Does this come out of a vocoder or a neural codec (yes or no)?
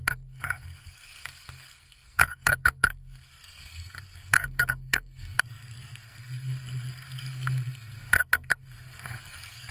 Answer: yes